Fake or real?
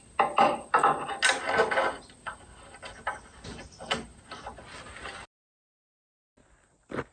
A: real